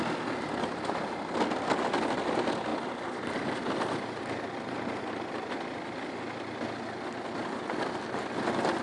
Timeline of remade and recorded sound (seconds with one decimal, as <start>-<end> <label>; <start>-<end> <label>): 0.0-2.7 recorded; 2.7-6.3 remade; 6.3-8.8 recorded